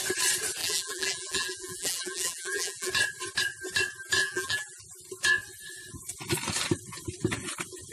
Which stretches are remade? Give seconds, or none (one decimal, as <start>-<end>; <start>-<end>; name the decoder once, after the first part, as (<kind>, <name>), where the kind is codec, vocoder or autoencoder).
0.6-2.9 (vocoder, BigVGAN v2); 4.2-4.8